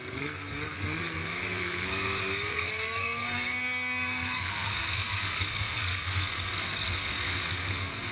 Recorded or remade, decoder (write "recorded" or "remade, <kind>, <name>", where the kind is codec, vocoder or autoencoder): remade, codec, SNAC